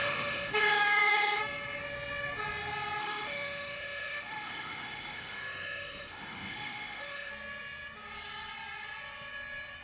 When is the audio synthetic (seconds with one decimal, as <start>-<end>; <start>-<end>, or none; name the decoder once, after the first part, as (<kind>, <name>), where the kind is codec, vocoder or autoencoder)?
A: 0.0-1.4 (autoencoder, DAC-VAE); 3.0-7.3